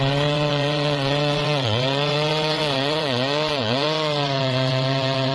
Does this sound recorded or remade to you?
remade